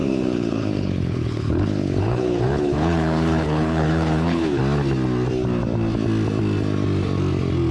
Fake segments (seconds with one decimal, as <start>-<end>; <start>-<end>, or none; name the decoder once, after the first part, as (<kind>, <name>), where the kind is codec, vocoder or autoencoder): 0.0-4.6 (codec, HILCodec)